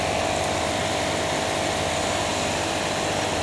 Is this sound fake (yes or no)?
no